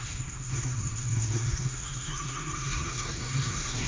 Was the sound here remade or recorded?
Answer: remade